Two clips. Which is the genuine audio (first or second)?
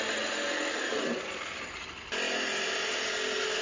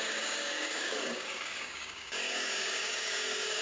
first